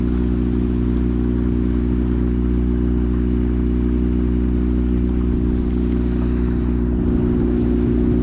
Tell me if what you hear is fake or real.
real